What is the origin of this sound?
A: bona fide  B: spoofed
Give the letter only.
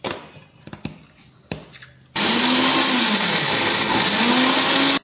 A